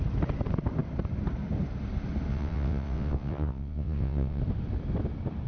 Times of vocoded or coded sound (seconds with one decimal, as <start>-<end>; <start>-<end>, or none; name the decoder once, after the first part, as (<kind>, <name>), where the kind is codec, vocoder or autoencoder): 2.3-4.4 (vocoder, WaveNeXt)